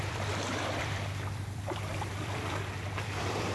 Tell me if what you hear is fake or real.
fake